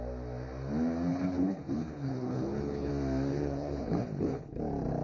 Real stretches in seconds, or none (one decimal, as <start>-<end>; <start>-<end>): 0.0-1.1; 2.9-3.3; 4.6-5.0